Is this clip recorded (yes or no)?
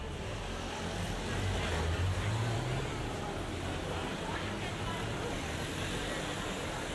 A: yes